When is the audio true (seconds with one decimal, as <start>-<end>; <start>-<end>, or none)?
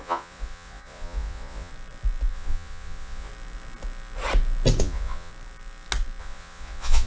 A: 1.7-2.3; 3.3-4.8; 5.3-6.2